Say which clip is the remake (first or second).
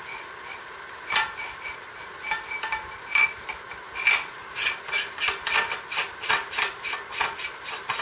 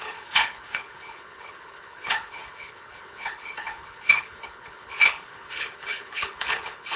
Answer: second